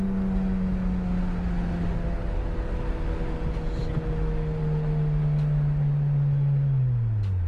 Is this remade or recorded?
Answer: recorded